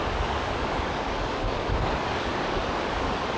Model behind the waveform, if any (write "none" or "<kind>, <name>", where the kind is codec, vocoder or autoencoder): codec, DAC